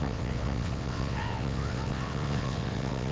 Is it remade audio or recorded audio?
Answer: remade